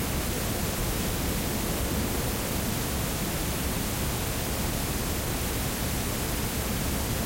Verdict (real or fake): real